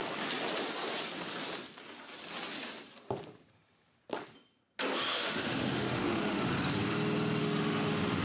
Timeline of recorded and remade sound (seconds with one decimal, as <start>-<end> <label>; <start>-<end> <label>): 0.0-5.1 recorded; 5.1-6.5 remade; 6.5-7.4 recorded; 7.4-8.2 remade